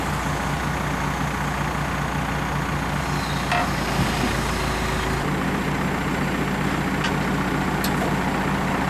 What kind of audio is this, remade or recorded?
recorded